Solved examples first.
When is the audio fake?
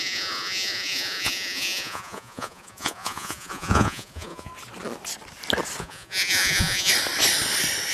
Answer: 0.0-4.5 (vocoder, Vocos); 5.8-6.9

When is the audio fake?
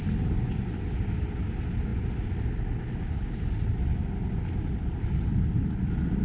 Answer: none